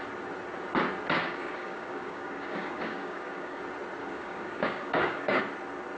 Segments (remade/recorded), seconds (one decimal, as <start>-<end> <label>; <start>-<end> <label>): 0.0-1.2 recorded; 1.2-3.6 remade; 3.6-4.0 recorded; 4.0-5.4 remade; 5.4-6.0 recorded